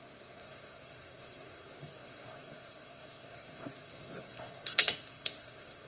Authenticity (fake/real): fake